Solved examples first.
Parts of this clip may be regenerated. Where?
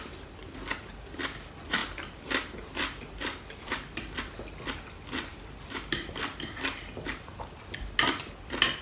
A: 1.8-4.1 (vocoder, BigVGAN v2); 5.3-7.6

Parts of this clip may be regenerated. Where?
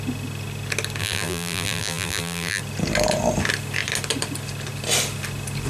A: 1.0-2.6 (vocoder, BigVGAN v2)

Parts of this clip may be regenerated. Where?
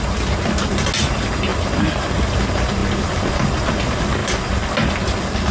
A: none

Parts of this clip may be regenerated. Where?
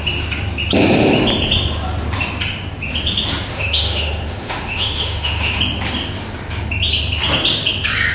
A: 3.5-5.6 (autoencoder, DAC-VAE)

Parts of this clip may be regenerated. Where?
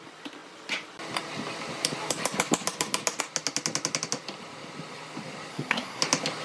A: 5.5-6.0 (codec, SNAC)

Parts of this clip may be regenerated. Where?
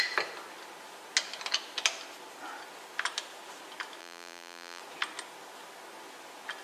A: 4.0-4.8 (vocoder, BigVGAN v2)